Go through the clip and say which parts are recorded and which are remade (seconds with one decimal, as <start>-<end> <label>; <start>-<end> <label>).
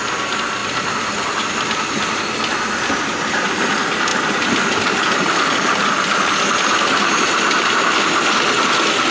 0.0-4.1 remade; 4.1-9.1 recorded